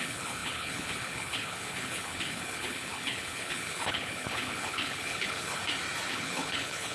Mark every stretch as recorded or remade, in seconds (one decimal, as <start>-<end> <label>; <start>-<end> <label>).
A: 0.0-5.6 remade; 5.6-6.1 recorded; 6.1-6.9 remade